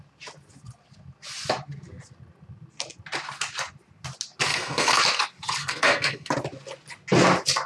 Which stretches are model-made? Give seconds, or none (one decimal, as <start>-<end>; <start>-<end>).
4.5-5.0; 5.6-6.3